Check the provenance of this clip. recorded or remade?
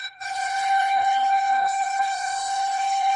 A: remade